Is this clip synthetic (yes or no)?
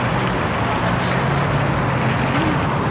no